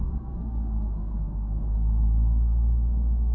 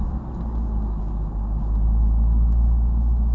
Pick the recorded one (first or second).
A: second